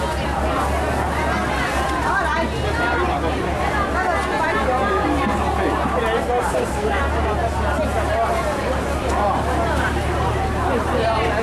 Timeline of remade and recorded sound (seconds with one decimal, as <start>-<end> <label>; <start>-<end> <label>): 0.0-6.5 recorded; 6.5-7.0 remade; 7.0-11.4 recorded